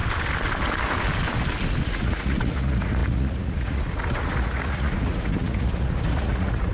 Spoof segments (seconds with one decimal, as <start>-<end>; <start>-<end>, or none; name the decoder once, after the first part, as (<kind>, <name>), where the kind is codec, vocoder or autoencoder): 1.8-6.7 (vocoder, Vocos)